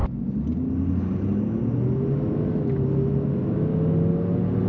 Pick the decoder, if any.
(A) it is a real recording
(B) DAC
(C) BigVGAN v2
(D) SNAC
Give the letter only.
A